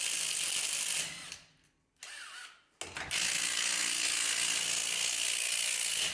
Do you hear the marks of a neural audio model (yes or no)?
no